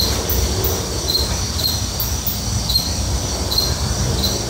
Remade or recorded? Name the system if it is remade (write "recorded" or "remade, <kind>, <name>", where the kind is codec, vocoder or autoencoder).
recorded